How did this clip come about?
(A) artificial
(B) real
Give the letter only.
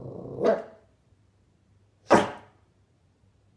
B